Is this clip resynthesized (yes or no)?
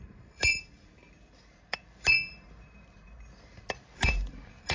yes